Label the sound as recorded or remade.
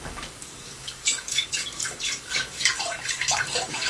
remade